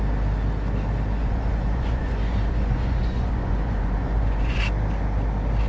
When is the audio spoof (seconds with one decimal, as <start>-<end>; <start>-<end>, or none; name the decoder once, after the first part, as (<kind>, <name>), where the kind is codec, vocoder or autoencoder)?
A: 1.2-4.6 (vocoder, Vocos)